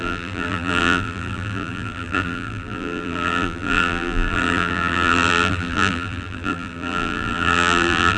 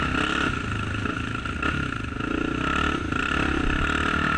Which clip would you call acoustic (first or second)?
second